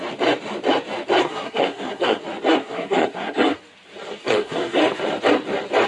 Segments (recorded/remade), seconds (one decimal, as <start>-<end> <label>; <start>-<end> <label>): 0.0-1.2 recorded; 1.2-2.2 remade; 2.2-2.6 recorded; 2.6-3.6 remade; 3.6-4.2 recorded; 4.2-4.8 remade; 4.8-5.9 recorded